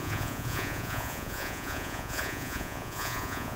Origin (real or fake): fake